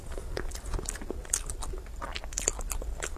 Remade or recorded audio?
recorded